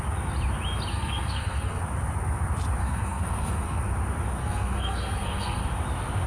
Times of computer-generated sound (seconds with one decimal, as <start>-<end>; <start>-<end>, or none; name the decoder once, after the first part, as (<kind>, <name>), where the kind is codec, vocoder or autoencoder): 0.9-1.8 (codec, SNAC); 2.8-3.8; 4.4-5.6